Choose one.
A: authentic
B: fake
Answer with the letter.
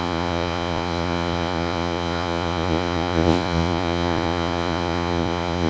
B